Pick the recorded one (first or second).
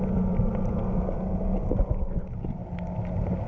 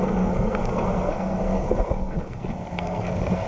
first